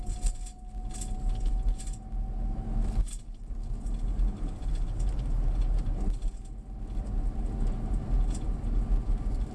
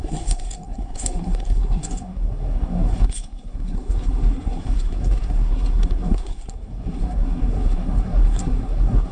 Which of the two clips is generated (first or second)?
second